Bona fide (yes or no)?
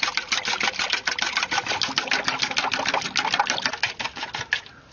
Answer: yes